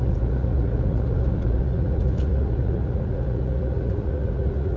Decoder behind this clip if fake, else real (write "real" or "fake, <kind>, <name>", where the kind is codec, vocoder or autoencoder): fake, vocoder, Vocos